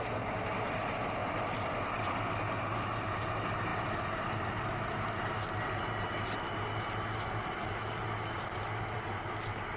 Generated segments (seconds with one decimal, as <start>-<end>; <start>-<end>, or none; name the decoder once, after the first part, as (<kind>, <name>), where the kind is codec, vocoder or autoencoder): none